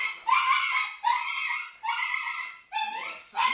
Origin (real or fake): real